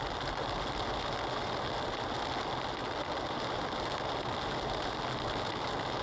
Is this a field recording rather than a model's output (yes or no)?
yes